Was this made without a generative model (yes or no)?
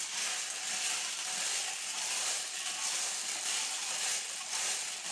yes